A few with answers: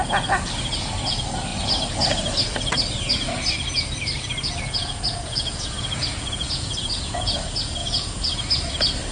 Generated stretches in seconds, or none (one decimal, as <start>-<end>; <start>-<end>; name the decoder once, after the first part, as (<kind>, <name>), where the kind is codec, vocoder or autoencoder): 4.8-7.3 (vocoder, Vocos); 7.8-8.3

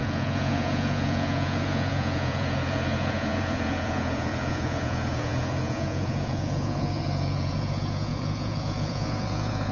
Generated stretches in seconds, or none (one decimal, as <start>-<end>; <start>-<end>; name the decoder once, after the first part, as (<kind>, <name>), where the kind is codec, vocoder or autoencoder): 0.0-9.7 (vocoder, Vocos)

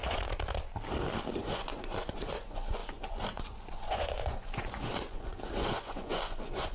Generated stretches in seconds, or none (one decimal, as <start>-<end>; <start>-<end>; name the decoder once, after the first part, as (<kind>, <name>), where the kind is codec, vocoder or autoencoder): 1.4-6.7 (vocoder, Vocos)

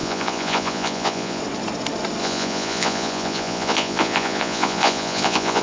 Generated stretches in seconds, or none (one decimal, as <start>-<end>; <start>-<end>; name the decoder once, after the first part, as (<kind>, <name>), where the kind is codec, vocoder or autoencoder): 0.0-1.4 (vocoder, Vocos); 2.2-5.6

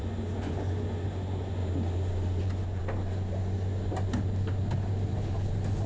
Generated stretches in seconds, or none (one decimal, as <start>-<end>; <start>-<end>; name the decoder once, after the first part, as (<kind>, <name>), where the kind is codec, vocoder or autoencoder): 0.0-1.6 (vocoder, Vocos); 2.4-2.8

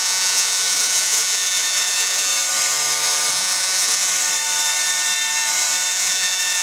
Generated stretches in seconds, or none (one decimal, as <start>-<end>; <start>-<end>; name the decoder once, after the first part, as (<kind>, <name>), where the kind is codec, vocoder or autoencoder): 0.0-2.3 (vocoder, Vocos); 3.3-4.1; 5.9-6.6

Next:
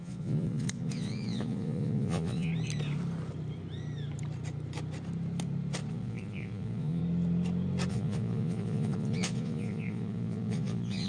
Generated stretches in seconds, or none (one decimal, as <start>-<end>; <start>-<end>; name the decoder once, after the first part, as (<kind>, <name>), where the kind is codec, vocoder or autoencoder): 0.0-2.5 (vocoder, Vocos); 5.9-7.0; 7.9-11.1